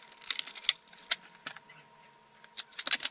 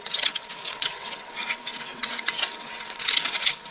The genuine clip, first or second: first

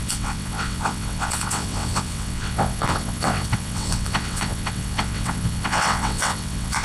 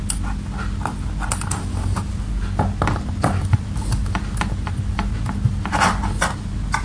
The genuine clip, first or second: second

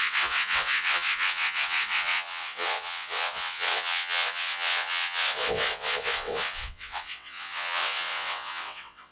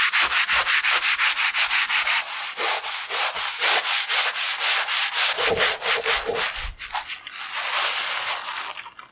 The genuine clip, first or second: second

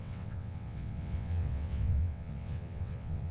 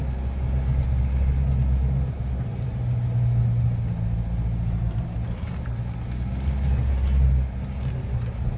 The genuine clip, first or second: second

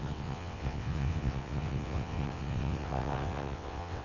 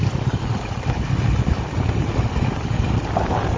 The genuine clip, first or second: second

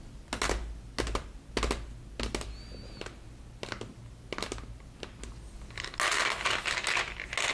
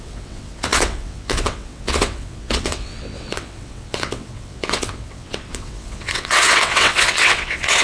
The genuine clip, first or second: first